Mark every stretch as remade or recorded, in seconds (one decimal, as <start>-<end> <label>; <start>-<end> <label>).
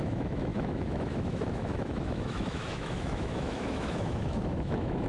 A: 0.0-5.1 remade